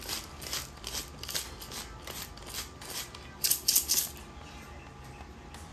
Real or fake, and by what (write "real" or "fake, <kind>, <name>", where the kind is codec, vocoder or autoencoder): real